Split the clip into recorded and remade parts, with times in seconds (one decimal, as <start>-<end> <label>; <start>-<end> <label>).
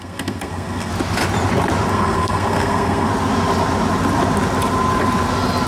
0.0-0.9 remade; 0.9-1.9 recorded; 1.9-3.1 remade; 3.1-5.7 recorded